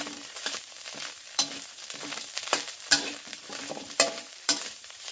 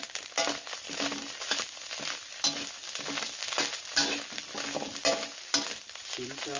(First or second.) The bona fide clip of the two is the second